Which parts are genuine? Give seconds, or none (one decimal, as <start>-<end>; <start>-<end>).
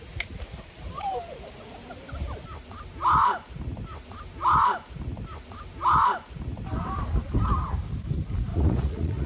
0.0-8.5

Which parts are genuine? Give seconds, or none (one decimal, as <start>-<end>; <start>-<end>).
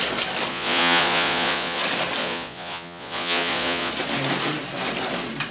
0.0-0.5; 1.8-2.2; 3.9-5.5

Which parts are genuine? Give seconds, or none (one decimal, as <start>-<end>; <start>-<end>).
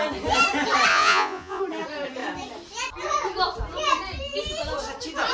0.0-0.9; 1.6-5.3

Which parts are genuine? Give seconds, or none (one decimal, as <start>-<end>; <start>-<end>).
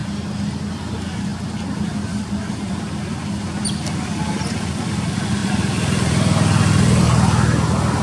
0.0-8.0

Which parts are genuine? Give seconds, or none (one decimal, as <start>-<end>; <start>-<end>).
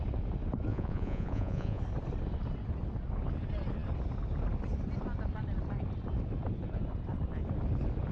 0.0-0.7; 1.8-8.1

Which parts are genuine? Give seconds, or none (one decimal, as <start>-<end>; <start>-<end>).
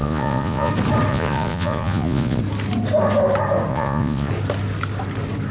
0.7-1.1; 2.4-3.7; 4.3-5.5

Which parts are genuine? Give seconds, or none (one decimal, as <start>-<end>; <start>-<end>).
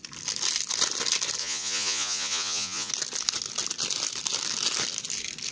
0.0-1.4; 2.9-5.5